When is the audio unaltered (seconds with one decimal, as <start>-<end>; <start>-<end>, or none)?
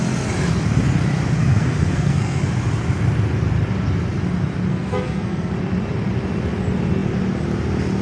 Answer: 0.0-1.4; 2.4-4.7; 5.5-8.0